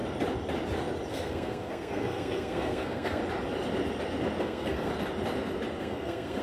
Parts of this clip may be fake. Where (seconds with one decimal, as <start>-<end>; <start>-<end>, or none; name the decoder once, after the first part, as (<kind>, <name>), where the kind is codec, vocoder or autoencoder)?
1.1-3.2 (codec, SNAC); 4.4-4.9; 5.8-6.4